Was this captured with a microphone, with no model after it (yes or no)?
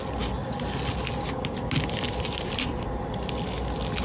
yes